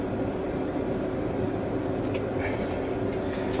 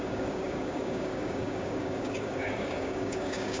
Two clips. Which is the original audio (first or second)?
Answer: first